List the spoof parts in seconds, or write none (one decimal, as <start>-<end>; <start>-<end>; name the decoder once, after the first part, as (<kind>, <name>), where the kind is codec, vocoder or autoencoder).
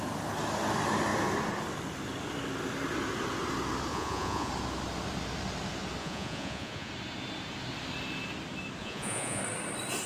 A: 3.9-4.5 (vocoder, Vocos); 6.0-6.9; 8.8-9.4